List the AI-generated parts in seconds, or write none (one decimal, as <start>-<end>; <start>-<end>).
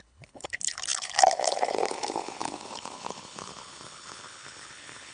0.0-5.1